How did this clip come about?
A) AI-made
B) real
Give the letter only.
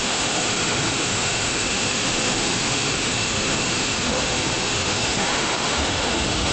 A